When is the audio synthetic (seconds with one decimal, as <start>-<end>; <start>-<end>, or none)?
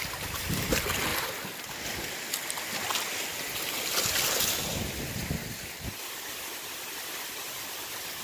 none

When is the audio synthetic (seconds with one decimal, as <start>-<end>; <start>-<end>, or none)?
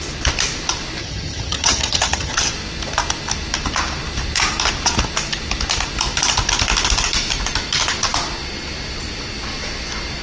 1.0-2.5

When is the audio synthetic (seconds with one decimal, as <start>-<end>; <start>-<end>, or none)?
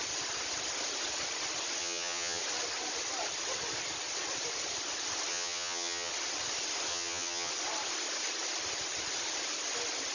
1.8-2.4; 5.3-6.1; 6.9-7.5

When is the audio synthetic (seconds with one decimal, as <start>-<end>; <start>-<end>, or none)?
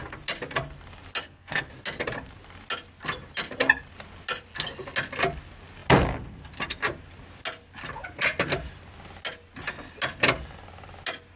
1.2-1.7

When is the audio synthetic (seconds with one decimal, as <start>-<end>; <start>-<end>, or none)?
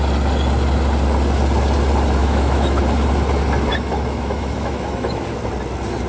2.2-2.8; 3.7-5.4